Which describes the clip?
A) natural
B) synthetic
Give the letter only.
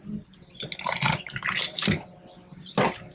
A